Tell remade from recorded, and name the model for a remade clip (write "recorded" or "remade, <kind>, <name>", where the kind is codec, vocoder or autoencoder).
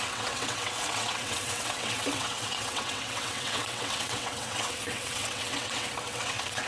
remade, vocoder, WaveNeXt